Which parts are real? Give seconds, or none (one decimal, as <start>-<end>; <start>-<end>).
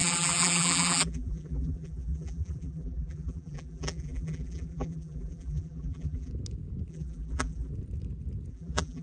6.3-6.9; 7.7-8.5